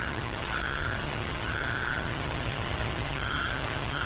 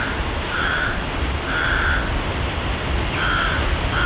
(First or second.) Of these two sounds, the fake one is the first